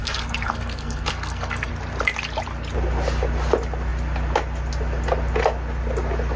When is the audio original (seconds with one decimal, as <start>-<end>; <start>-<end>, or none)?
1.7-6.4